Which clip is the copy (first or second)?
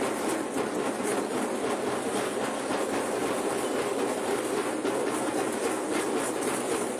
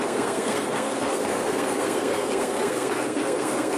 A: second